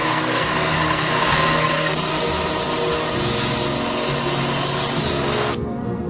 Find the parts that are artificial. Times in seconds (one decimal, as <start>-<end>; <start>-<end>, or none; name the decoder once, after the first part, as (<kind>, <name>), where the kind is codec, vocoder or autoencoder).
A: 0.0-2.1 (codec, SNAC); 5.1-6.1